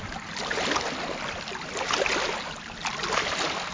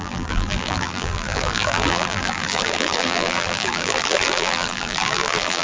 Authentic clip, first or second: first